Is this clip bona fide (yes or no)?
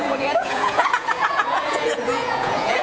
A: no